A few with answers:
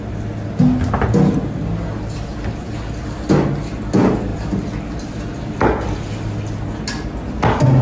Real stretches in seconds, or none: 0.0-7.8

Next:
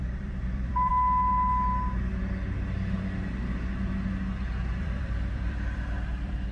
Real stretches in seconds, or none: 0.9-4.8

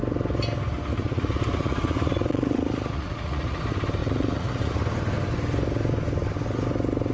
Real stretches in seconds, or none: 0.0-0.9; 3.6-4.0; 4.7-7.1

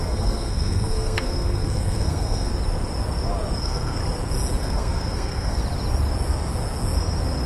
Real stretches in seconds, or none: 2.5-3.6; 4.0-4.6; 5.6-7.5